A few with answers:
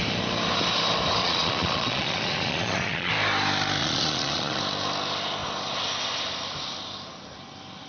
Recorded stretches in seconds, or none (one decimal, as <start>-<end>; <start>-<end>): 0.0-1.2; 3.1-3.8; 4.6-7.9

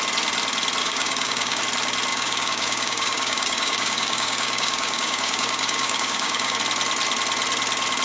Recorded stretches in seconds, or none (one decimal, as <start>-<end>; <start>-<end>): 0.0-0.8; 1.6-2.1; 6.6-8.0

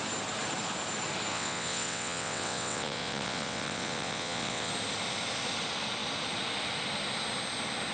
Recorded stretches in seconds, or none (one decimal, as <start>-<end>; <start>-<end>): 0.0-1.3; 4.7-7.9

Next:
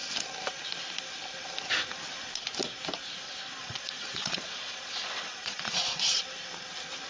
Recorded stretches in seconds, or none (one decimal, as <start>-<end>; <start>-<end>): 0.0-3.6; 6.2-7.1

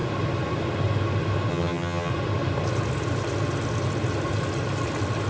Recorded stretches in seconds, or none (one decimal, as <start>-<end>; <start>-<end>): 0.0-1.5; 2.1-5.3

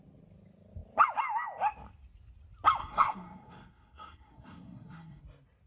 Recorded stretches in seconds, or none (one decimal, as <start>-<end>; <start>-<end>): 0.0-2.8; 5.2-5.7

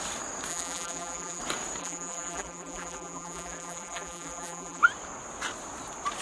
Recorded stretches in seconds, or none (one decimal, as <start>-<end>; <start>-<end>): 0.0-0.5; 1.4-1.8; 4.8-6.2